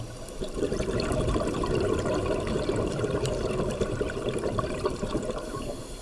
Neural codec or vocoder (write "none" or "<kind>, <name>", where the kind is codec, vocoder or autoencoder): vocoder, BigVGAN v2